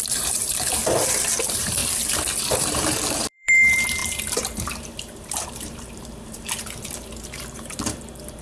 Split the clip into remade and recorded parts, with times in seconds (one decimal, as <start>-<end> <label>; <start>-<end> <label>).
0.0-0.8 remade; 0.8-1.4 recorded; 1.4-1.8 remade; 1.8-2.6 recorded; 2.6-8.4 remade